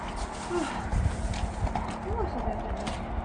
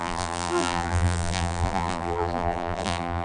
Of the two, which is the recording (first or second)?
first